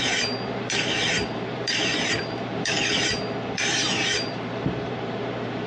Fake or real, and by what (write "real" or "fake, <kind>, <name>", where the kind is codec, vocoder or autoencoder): fake, vocoder, BigVGAN v2